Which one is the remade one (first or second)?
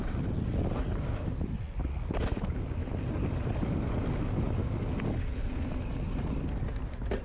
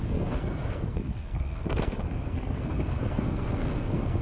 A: second